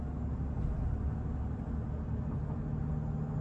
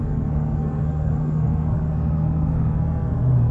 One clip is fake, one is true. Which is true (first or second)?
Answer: first